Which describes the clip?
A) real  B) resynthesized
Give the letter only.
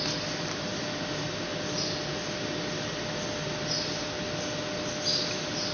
A